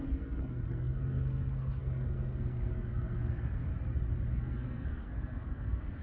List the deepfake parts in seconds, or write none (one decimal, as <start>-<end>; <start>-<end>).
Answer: 0.0-3.7; 4.3-6.0